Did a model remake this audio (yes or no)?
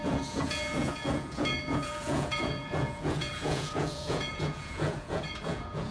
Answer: yes